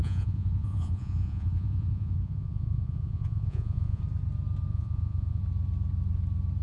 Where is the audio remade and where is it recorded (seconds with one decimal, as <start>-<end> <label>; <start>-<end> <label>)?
0.0-4.0 remade; 4.0-4.7 recorded; 4.7-5.4 remade; 5.4-6.6 recorded